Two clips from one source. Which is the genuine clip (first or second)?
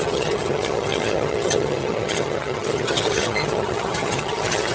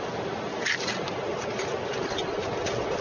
second